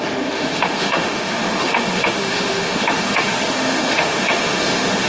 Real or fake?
fake